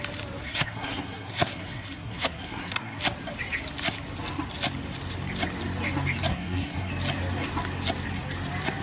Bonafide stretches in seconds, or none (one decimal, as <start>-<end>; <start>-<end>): 0.0-0.4; 3.0-6.3; 6.9-8.8